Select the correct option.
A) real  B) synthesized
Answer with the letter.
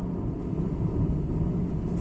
A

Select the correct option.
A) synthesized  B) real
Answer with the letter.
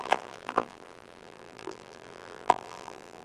A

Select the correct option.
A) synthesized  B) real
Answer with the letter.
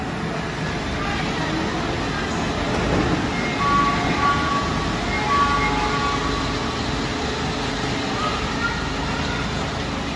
B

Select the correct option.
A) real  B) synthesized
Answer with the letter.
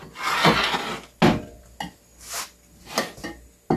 A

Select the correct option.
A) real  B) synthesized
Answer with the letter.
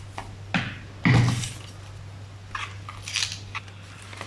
A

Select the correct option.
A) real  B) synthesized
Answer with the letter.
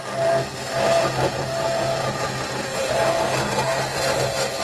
A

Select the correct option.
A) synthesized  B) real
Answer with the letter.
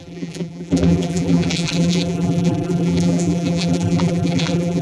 A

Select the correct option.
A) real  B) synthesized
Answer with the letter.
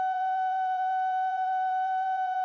B